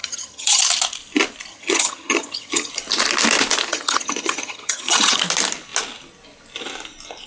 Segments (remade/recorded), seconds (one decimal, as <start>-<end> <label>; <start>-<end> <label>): 0.0-0.6 remade; 0.6-1.5 recorded; 1.5-2.7 remade; 2.7-3.7 recorded; 3.7-5.2 remade; 5.2-7.3 recorded